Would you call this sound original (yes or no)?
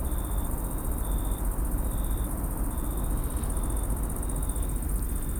yes